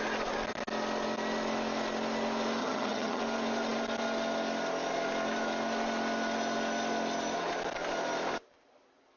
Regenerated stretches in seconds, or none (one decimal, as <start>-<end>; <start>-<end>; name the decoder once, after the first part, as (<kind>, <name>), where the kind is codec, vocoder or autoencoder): 2.6-3.2 (vocoder, HiFi-GAN)